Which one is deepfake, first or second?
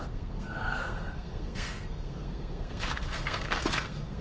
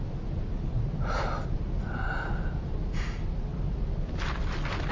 first